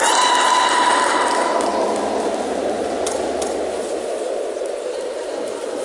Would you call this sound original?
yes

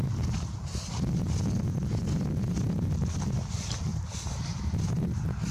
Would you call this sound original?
yes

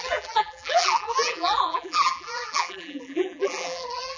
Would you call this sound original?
no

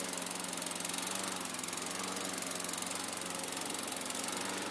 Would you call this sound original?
yes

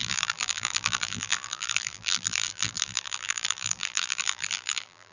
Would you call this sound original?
no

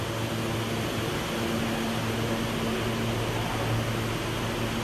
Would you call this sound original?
yes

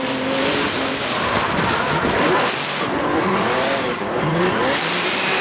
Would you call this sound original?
no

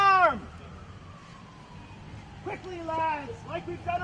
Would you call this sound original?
yes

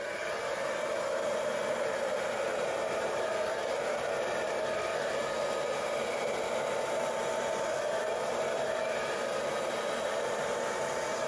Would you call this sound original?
yes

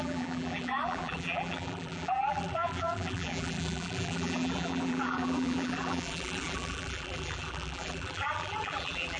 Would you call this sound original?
no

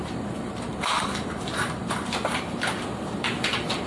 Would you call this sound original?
no